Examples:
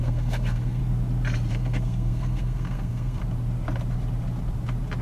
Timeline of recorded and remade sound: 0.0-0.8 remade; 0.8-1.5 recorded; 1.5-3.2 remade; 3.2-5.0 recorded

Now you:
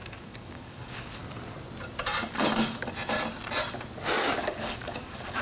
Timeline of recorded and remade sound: 0.0-1.2 remade; 1.2-4.4 recorded; 4.4-5.4 remade

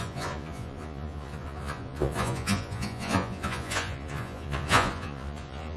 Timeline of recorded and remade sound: 0.0-5.8 remade

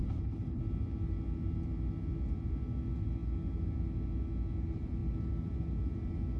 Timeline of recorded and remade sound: 0.0-0.6 remade; 0.6-6.4 recorded

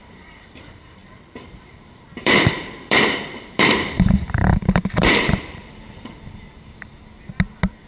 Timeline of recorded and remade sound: 0.0-6.9 remade; 6.9-7.9 recorded

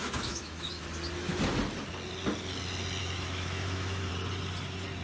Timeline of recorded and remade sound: 0.0-0.8 remade; 0.8-3.0 recorded; 3.0-4.1 remade; 4.1-5.0 recorded

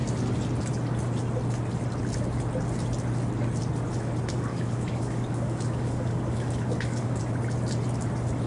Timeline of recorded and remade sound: 0.0-4.5 recorded; 4.5-7.2 remade; 7.2-8.5 recorded